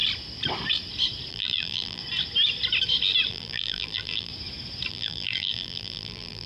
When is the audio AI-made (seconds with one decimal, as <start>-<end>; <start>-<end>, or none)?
1.3-2.0; 3.3-4.3; 4.9-6.5